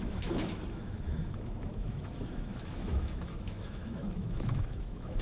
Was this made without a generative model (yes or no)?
no